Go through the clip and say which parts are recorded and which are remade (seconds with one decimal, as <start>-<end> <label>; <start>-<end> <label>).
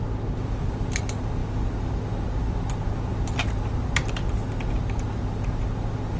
0.0-6.2 recorded